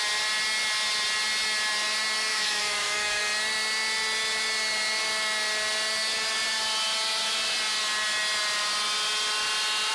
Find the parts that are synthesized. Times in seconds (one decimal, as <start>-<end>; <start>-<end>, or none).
2.3-3.2